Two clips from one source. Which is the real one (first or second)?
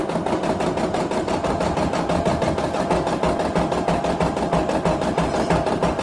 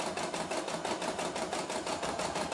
first